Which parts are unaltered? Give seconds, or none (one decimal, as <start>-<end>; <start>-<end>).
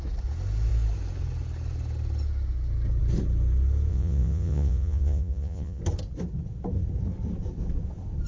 0.0-3.9; 5.8-8.3